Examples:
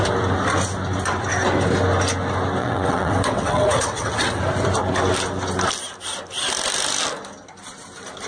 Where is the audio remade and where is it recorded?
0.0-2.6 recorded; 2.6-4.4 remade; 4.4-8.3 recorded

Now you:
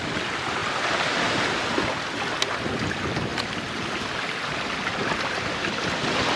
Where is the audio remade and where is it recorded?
0.0-6.4 recorded

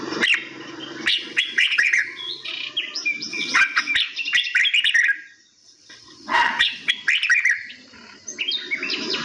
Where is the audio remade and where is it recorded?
0.0-1.1 recorded; 1.1-2.5 remade; 2.5-3.3 recorded; 3.3-3.9 remade; 3.9-5.6 recorded; 5.6-6.9 remade; 6.9-9.2 recorded

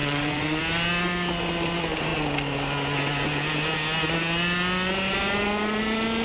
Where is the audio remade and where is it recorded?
0.0-0.6 remade; 0.6-6.2 recorded

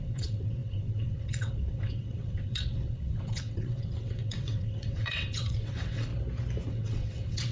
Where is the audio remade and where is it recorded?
0.0-6.1 remade; 6.1-6.7 recorded; 6.7-7.5 remade